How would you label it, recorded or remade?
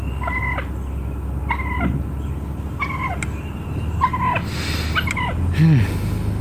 recorded